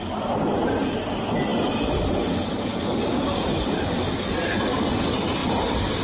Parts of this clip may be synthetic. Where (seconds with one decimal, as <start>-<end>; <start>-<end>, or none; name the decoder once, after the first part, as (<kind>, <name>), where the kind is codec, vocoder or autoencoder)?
none